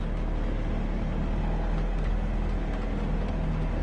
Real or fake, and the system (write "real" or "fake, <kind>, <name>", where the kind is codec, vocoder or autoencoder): real